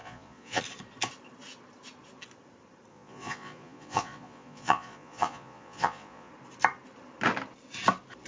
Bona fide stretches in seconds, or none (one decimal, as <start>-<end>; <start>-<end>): 0.6-2.9; 6.3-8.3